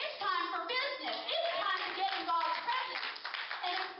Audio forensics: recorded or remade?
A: recorded